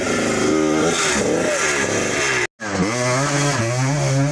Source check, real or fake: real